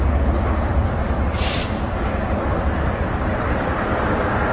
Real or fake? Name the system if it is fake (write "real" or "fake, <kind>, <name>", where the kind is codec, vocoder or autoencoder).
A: fake, vocoder, BigVGAN v2